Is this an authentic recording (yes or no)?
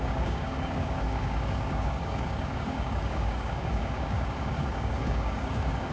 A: no